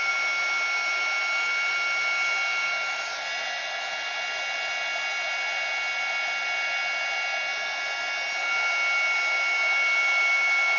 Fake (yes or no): no